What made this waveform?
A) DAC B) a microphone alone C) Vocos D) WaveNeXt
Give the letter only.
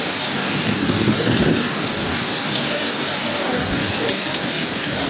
A